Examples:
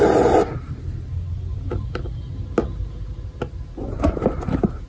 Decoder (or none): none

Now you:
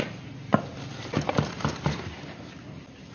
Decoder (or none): none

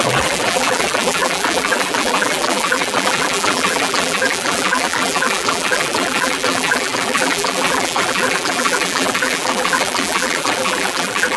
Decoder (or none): vocoder, BigVGAN v2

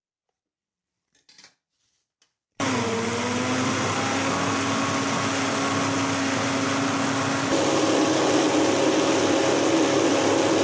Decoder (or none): none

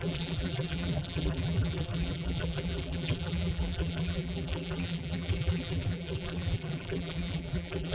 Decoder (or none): vocoder, BigVGAN v2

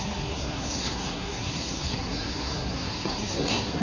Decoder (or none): codec, SNAC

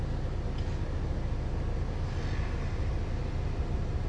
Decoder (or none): none